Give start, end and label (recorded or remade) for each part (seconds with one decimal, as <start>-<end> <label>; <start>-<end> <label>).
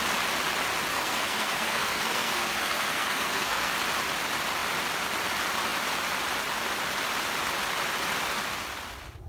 0.0-0.9 recorded; 0.9-3.7 remade; 3.7-9.3 recorded